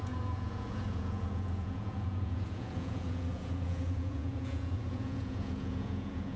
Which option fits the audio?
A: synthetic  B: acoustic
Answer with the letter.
A